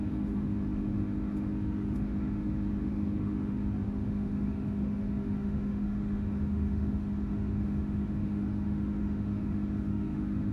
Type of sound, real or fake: fake